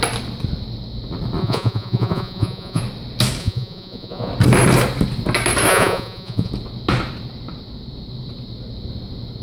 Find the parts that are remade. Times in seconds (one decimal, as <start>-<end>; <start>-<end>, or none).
1.4-2.8; 3.4-4.3; 5.7-6.5